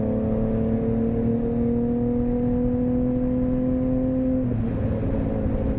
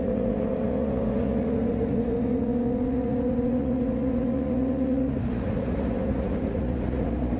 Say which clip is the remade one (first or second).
second